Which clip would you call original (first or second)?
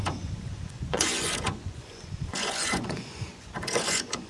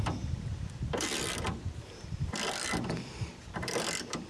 second